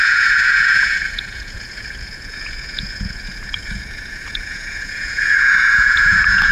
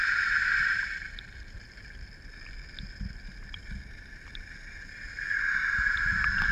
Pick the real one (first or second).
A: second